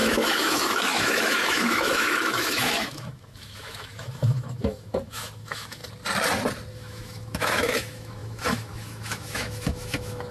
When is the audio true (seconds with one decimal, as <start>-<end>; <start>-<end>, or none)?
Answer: 5.8-6.7